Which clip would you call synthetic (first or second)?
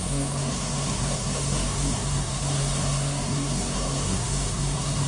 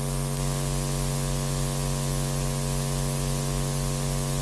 first